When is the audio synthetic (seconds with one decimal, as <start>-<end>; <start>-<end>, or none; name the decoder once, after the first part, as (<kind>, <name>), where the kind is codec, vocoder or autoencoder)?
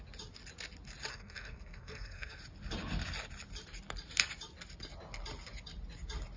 1.1-2.4 (codec, SNAC)